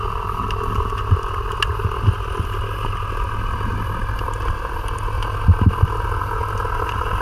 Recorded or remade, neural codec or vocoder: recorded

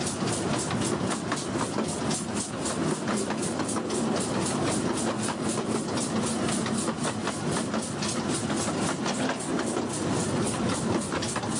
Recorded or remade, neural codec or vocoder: recorded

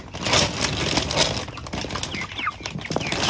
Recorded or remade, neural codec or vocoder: recorded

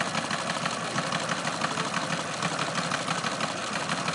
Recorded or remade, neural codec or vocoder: recorded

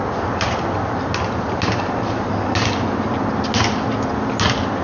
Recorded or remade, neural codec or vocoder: recorded